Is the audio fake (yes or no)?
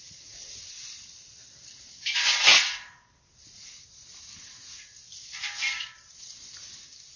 no